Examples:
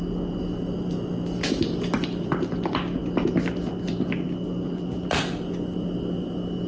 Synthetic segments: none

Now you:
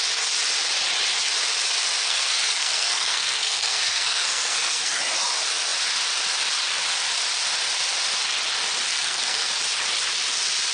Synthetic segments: 2.0-5.0 (codec, SNAC); 8.9-9.5

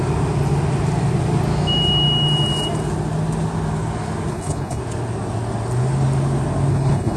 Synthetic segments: 4.3-4.8 (codec, HILCodec); 6.7-7.2

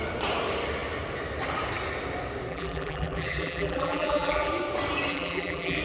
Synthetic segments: 2.5-4.5 (vocoder, BigVGAN v2); 5.1-5.8